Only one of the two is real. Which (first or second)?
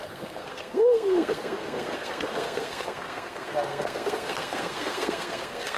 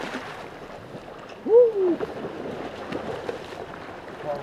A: second